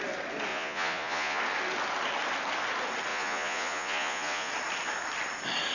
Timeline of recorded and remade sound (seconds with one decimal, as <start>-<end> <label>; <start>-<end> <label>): 0.0-0.5 recorded; 0.5-1.4 remade; 1.4-3.1 recorded; 3.1-4.5 remade; 4.5-5.7 recorded